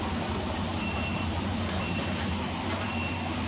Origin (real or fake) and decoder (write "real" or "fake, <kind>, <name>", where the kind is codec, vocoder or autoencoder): fake, vocoder, BigVGAN v2